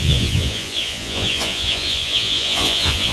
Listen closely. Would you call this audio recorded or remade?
remade